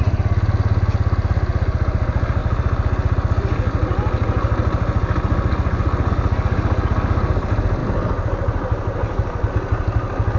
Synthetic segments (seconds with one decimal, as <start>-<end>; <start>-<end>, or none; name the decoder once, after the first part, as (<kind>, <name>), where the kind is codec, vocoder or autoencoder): none